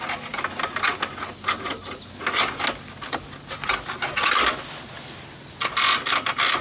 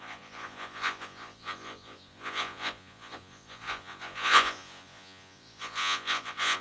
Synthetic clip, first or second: second